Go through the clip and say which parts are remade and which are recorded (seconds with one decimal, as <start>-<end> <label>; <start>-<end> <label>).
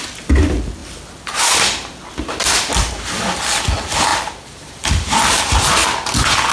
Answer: 0.0-6.5 recorded